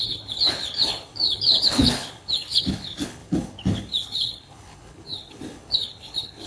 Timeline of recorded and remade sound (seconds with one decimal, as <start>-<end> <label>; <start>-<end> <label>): 0.0-6.5 remade